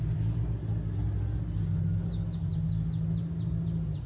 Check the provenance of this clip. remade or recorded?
recorded